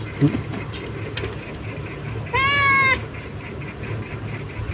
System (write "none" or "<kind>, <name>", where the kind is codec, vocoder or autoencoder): none